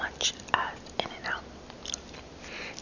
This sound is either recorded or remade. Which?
recorded